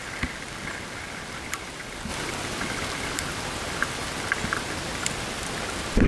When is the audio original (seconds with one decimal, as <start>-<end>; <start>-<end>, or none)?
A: 0.0-6.1